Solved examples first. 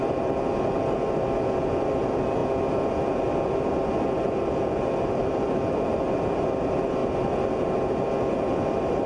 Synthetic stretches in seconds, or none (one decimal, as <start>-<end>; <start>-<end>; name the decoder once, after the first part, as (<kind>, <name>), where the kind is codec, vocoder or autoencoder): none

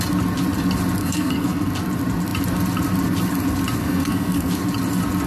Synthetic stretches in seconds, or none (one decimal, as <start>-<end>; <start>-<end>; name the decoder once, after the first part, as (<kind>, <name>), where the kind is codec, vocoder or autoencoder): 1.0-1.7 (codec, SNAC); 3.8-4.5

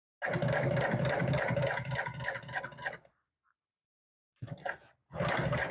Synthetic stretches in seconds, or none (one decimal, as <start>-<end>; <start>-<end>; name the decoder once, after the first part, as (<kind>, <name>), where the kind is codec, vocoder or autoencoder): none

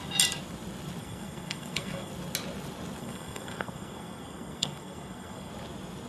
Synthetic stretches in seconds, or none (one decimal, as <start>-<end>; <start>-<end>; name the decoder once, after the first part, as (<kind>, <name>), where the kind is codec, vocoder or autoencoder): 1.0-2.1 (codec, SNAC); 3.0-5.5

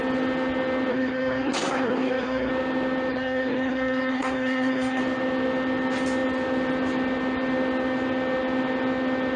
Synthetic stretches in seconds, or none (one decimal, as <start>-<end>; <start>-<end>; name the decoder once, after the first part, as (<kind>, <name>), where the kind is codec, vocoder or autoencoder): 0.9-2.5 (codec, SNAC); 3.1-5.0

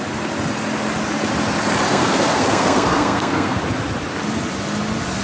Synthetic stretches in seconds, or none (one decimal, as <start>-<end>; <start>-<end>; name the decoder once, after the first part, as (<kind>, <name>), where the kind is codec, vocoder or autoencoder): 1.9-3.6 (codec, SNAC)